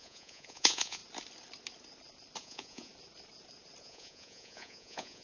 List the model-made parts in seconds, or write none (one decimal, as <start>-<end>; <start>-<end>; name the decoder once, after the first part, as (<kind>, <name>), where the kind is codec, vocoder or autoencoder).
0.0-1.0 (vocoder, Vocos); 2.4-2.9; 3.8-5.2